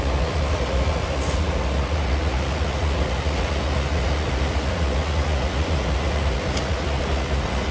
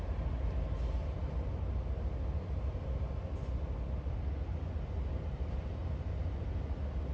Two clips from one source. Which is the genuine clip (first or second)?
second